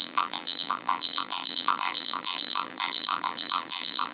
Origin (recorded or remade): remade